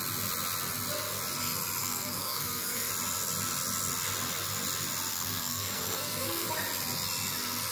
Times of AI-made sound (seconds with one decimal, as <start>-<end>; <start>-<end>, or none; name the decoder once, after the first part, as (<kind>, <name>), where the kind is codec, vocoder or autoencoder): 1.8-2.9 (codec, SNAC); 5.1-6.5